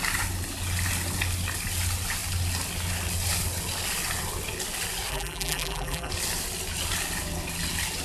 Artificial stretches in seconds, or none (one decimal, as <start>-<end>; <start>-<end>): 5.1-6.1